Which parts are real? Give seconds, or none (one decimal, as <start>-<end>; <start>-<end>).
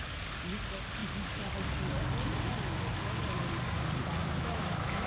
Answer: 0.0-4.2